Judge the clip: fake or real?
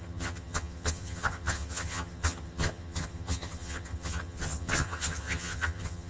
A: fake